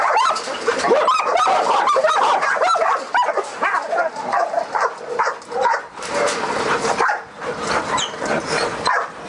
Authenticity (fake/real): fake